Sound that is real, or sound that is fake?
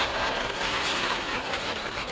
fake